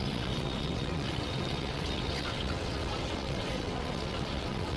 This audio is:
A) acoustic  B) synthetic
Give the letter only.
B